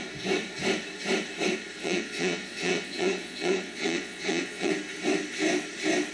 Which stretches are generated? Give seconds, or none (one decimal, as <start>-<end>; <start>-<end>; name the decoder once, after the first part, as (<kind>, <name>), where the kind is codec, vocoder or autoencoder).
1.8-4.7 (vocoder, Vocos)

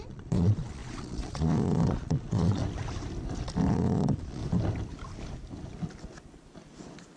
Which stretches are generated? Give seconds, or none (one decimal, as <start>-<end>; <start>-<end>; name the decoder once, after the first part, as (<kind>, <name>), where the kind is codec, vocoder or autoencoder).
0.0-2.6 (vocoder, Vocos); 3.7-4.4

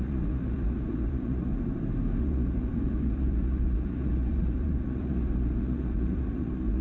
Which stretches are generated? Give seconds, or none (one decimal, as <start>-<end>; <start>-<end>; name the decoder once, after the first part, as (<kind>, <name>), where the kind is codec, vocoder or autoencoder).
0.0-1.5 (vocoder, Vocos); 2.2-6.8